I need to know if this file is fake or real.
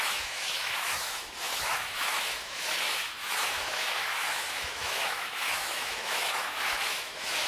fake